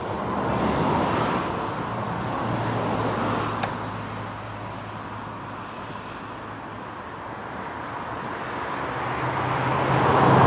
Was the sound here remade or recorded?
recorded